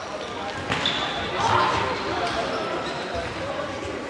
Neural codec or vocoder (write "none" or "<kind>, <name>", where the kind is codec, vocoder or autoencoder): none